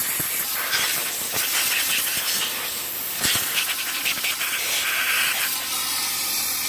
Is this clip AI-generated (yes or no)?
no